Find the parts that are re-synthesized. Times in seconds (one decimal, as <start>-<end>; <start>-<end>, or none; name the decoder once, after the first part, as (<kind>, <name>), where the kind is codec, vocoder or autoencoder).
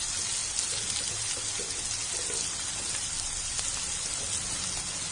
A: none